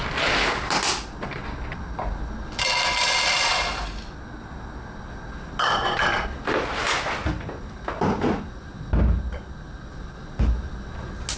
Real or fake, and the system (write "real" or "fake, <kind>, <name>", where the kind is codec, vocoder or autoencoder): real